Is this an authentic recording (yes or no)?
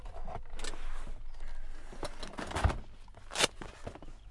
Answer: yes